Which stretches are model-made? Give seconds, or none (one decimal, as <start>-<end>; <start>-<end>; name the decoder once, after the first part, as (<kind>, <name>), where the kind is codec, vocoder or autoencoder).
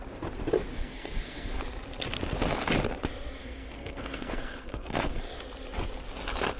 0.7-1.6 (codec, SNAC); 3.4-5.2